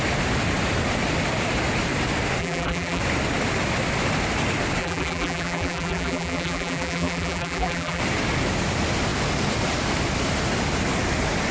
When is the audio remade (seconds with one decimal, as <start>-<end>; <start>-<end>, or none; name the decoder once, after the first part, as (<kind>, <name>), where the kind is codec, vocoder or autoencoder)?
2.4-3.0 (vocoder, BigVGAN v2); 4.8-8.0